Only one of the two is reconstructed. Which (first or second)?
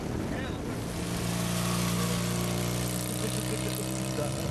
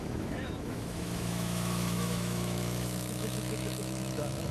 second